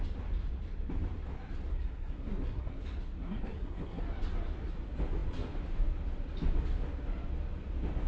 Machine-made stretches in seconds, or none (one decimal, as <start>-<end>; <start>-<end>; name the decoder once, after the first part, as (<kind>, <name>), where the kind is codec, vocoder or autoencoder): 1.7-2.8 (codec, SNAC); 3.2-4.0